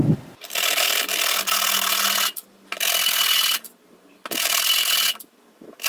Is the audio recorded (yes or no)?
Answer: yes